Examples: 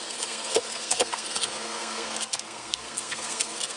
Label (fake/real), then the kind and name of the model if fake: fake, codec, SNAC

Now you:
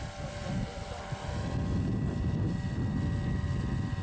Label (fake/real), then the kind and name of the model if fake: real